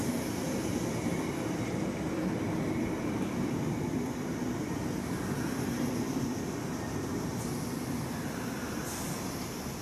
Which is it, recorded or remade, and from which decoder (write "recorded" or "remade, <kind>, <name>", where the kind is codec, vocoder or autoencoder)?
recorded